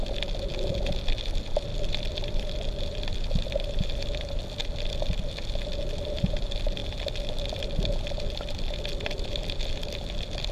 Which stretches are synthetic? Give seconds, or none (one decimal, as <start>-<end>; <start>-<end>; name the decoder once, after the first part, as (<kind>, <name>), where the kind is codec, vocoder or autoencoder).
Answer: 1.7-3.1 (vocoder, BigVGAN v2)